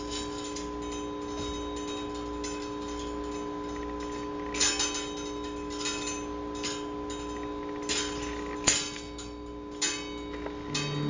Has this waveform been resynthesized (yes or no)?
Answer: no